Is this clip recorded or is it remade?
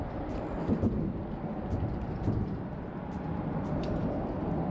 recorded